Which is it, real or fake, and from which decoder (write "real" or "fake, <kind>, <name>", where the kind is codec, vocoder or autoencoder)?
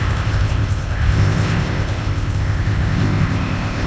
fake, codec, ZipCodec